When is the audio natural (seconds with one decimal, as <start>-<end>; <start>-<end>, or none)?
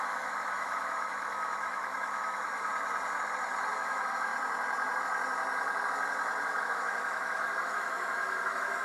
2.7-3.7; 4.3-6.6